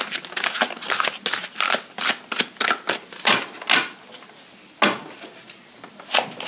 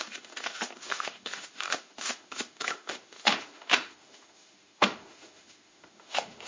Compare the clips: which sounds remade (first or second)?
second